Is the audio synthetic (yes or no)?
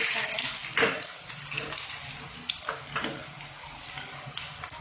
no